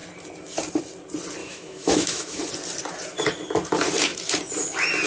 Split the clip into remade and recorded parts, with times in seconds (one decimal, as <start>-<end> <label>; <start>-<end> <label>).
0.0-1.4 recorded; 1.4-2.4 remade; 2.4-5.1 recorded